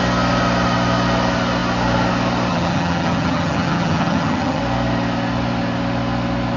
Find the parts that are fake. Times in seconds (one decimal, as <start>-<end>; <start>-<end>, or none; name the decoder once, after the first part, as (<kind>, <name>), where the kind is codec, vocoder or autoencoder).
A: 2.5-4.6 (vocoder, HiFi-GAN)